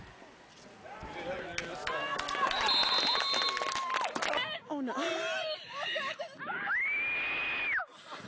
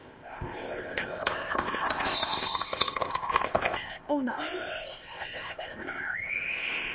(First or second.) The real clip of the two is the first